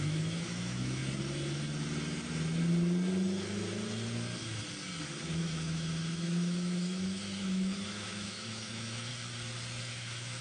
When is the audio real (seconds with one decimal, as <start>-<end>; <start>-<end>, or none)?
1.0-5.2; 9.1-9.8